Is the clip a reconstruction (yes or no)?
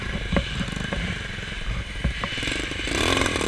yes